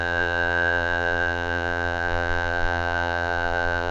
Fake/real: fake